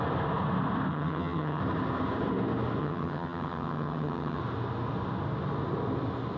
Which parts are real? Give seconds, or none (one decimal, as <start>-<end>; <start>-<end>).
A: 0.0-0.9; 1.6-2.8; 4.4-6.4